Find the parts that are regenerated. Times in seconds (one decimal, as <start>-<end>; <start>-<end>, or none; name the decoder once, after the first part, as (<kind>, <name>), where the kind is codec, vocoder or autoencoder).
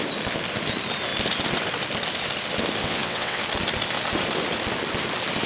2.8-3.4 (vocoder, WaveNeXt)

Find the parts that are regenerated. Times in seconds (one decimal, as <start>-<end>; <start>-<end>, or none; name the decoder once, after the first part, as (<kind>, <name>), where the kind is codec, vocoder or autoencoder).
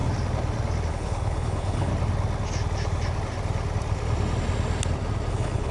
0.9-1.9 (codec, HILCodec); 5.3-5.7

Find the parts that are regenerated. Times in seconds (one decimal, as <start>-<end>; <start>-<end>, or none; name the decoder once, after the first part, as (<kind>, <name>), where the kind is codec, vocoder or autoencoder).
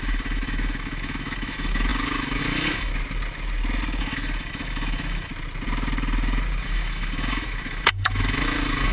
0.0-2.9 (autoencoder, DAC-VAE); 4.0-5.3; 6.6-8.9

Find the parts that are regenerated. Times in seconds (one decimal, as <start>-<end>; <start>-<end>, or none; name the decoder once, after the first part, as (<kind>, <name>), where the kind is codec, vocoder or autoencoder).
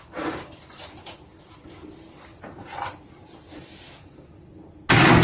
0.0-4.5 (vocoder, BigVGAN v2)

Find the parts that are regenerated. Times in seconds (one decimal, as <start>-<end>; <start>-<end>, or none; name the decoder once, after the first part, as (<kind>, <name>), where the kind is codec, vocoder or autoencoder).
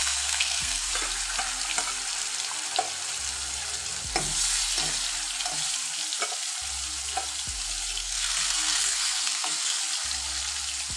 0.0-0.9 (codec, SNAC); 8.0-9.8